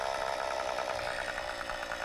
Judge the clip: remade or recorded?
recorded